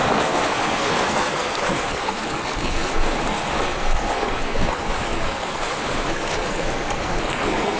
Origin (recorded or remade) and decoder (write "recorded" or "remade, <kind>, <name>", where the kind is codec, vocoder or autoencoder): remade, codec, SNAC